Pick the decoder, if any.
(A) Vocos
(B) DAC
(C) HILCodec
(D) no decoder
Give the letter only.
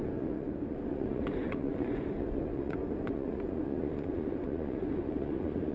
A